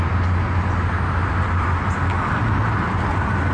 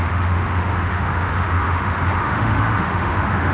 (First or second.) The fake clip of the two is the second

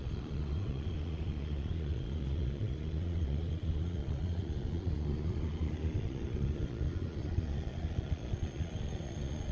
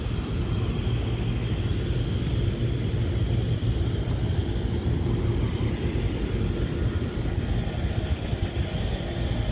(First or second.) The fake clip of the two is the first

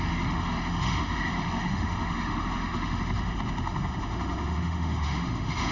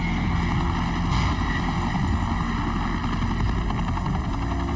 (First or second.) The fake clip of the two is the first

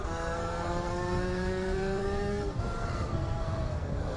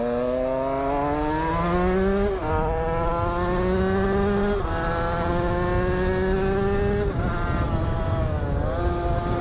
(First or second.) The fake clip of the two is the first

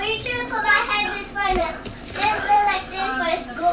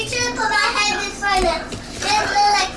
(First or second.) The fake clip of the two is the first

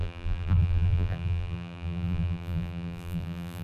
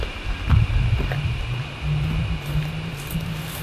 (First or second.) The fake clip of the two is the first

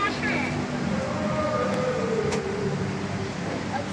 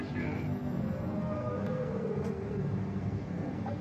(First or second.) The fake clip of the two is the second